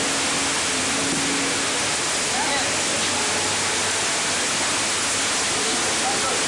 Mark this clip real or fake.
real